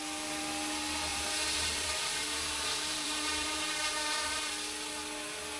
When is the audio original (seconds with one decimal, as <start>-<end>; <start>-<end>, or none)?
0.0-1.1; 4.5-5.6